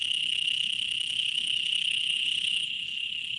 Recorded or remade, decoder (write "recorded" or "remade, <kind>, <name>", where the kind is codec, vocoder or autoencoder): remade, codec, HILCodec